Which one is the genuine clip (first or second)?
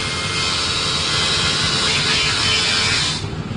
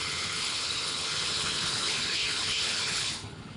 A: first